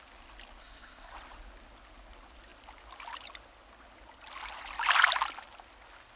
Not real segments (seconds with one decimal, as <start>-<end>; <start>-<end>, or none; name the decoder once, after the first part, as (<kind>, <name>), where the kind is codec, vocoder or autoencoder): 0.6-1.1 (codec, SNAC)